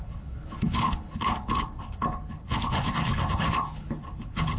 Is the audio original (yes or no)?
no